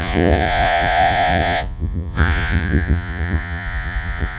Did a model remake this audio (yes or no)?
yes